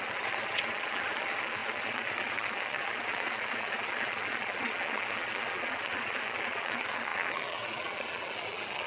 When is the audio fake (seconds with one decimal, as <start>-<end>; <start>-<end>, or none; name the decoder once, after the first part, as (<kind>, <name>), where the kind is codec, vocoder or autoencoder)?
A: 0.0-8.9 (vocoder, Vocos)